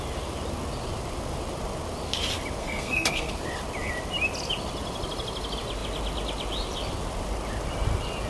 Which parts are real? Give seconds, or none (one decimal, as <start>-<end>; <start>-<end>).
0.0-2.6; 3.3-8.3